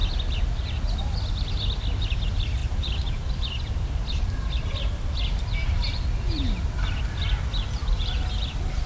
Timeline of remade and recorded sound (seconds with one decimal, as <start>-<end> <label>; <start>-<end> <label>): 0.0-2.6 recorded; 2.6-7.0 remade; 7.0-7.8 recorded; 7.8-8.9 remade